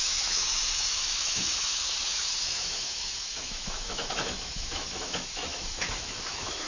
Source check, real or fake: fake